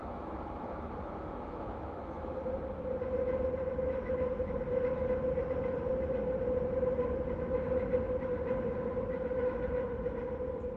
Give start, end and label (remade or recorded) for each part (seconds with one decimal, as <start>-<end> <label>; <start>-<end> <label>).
0.0-2.4 remade; 2.4-10.8 recorded